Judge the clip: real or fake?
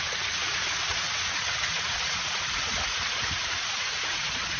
fake